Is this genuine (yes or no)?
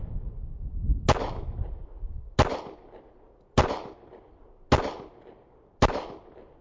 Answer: yes